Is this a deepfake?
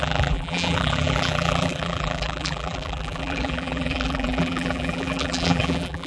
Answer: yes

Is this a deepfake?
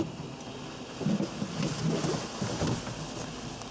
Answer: no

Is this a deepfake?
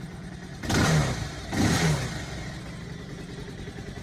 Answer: no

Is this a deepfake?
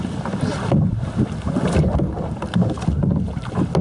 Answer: no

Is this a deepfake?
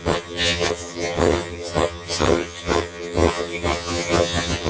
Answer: yes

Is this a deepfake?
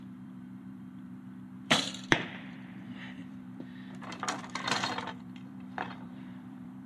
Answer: yes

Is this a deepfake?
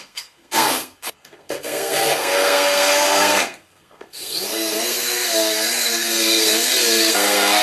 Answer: yes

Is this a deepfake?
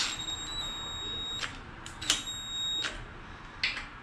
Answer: no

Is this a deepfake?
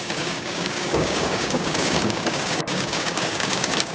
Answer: yes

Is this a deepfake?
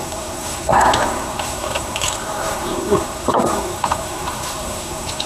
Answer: yes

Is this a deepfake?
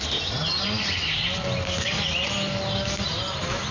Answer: no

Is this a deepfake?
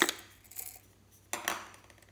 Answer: no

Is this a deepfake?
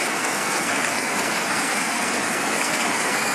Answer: yes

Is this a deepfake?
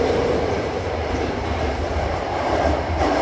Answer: yes